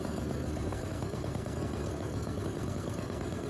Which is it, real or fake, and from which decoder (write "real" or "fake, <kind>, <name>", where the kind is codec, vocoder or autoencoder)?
fake, codec, SNAC